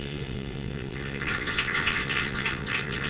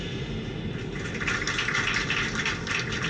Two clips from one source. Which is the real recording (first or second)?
second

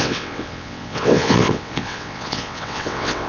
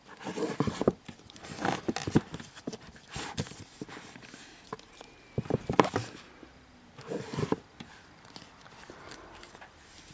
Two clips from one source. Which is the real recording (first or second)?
second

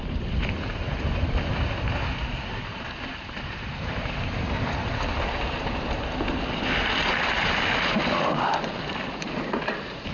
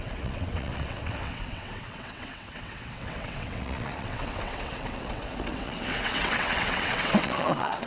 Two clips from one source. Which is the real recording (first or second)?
first